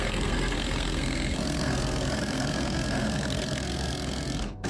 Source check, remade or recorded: remade